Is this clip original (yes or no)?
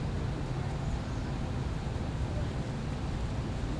yes